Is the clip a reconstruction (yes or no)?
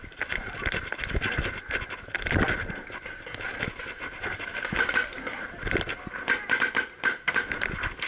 no